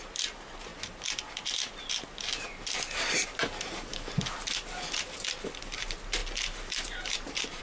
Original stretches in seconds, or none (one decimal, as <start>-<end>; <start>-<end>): 0.0-7.6